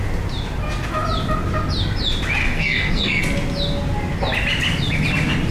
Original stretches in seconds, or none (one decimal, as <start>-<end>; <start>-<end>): 0.0-2.4; 3.2-5.5